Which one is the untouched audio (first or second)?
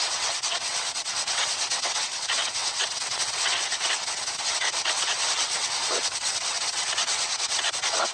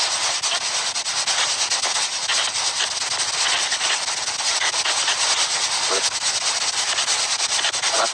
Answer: second